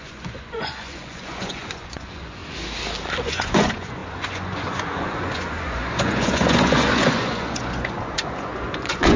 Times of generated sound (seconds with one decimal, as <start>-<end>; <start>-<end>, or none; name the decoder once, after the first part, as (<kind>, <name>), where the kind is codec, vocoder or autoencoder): 0.0-2.4 (vocoder, Vocos); 3.2-9.2